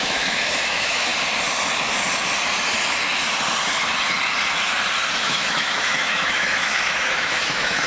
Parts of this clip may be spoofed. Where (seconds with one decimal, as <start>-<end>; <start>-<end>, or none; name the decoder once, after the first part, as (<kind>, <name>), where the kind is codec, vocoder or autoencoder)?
0.0-1.1 (autoencoder, DAC-VAE); 5.2-7.9